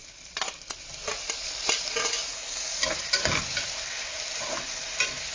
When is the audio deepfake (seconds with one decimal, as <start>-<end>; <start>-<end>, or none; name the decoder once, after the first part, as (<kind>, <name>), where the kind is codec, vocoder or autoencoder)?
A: 0.0-2.1 (vocoder, BigVGAN v2)